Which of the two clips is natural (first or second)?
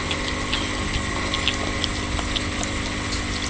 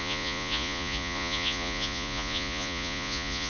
first